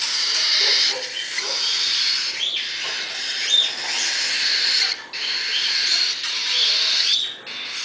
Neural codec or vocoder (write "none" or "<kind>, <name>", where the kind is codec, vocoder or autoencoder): none